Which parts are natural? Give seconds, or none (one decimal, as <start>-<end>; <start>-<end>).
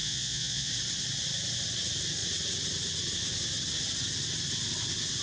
0.7-5.2